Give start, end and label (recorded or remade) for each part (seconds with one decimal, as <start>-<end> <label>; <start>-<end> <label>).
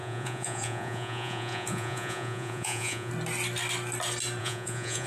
0.0-3.1 remade; 3.1-4.4 recorded; 4.4-5.1 remade